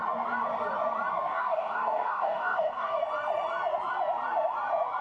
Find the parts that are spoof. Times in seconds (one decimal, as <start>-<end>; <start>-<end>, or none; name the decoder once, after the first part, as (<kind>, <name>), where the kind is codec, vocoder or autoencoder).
1.3-3.0 (codec, DAC)